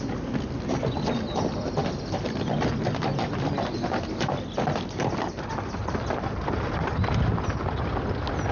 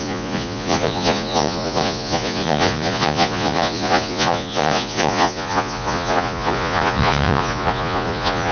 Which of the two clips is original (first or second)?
first